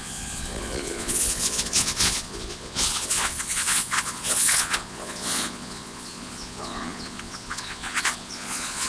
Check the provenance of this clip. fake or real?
fake